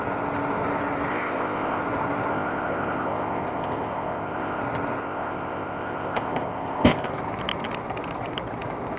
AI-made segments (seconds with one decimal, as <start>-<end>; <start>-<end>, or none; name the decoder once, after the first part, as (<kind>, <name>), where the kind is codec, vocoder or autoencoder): 1.1-1.8 (codec, ZipCodec); 2.3-4.6; 5.0-7.1